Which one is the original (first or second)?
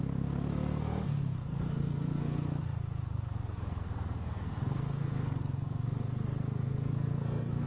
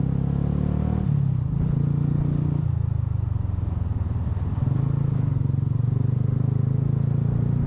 second